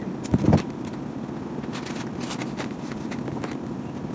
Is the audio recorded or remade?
recorded